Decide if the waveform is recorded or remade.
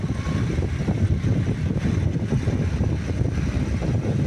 recorded